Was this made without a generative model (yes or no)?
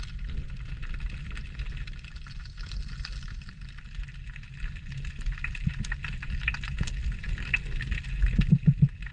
yes